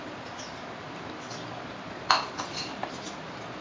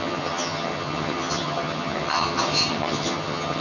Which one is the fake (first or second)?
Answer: second